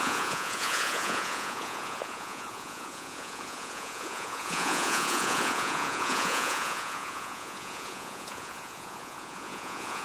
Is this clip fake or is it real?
fake